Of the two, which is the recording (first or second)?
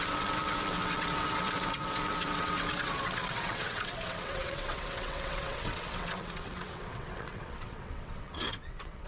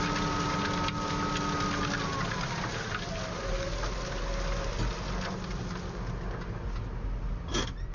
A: second